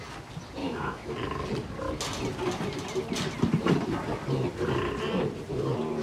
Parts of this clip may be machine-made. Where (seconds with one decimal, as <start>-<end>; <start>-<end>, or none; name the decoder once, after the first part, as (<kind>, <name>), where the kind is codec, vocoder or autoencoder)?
0.6-1.1 (autoencoder, DAC-VAE)